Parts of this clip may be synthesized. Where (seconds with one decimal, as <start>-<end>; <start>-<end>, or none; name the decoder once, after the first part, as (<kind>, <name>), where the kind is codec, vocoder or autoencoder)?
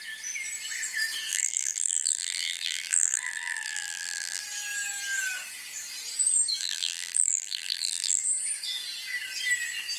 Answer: 1.3-4.4 (vocoder, BigVGAN v2); 6.6-8.2